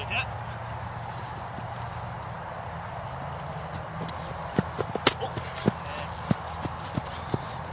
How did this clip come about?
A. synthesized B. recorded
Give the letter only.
B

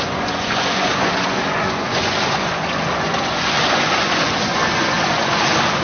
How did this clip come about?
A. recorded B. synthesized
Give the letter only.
B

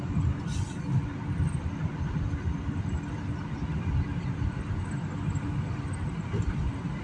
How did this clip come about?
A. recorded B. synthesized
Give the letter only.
A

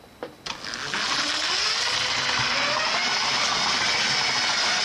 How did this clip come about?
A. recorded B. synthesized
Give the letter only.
A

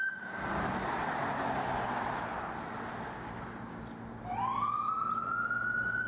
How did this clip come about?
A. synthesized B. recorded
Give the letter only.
B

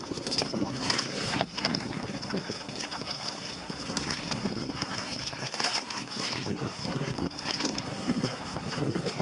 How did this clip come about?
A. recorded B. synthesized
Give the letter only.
B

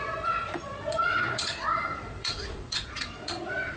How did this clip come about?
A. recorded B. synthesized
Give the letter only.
B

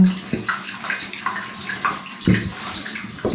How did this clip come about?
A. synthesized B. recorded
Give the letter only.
B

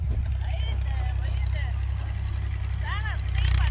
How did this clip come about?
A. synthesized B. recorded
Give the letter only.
B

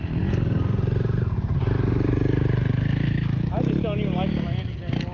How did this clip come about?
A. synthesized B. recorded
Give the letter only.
B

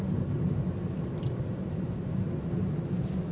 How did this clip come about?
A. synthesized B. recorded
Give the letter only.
B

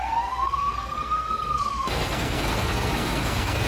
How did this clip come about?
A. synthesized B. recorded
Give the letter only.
A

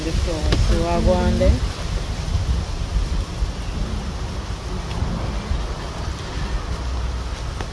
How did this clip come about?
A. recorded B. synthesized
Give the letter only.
A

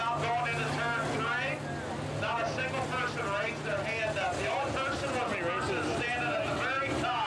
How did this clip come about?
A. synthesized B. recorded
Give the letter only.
B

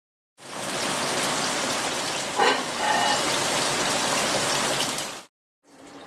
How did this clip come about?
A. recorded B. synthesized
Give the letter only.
A